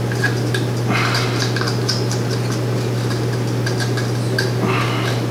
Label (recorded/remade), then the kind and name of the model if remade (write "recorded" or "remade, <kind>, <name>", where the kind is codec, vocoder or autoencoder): recorded